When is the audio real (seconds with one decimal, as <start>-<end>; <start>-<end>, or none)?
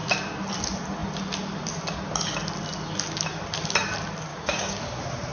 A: 0.0-4.3; 4.8-5.3